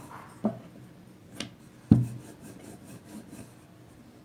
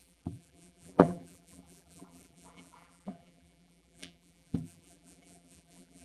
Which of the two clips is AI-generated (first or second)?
second